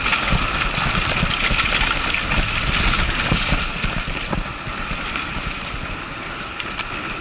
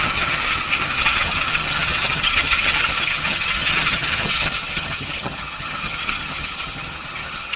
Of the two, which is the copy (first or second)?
second